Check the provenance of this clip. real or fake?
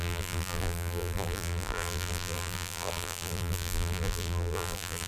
fake